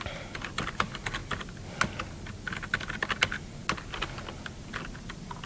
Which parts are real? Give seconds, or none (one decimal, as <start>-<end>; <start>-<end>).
0.0-5.5